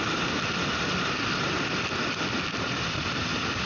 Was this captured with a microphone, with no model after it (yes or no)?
yes